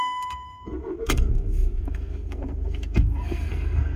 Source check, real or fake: fake